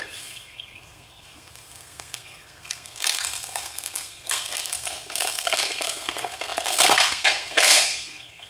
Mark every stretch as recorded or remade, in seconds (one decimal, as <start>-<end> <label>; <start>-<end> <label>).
0.0-8.5 remade